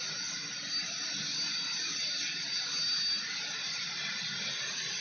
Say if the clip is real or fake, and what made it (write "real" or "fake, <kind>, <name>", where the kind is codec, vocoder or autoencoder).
real